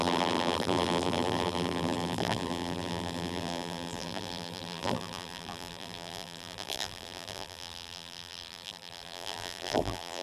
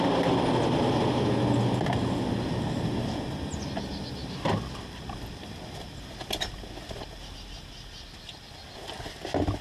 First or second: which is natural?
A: second